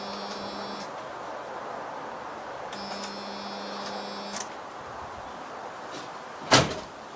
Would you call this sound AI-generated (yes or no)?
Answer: no